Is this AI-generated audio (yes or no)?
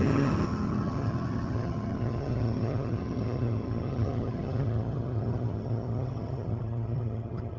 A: yes